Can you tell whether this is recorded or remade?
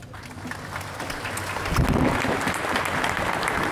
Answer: recorded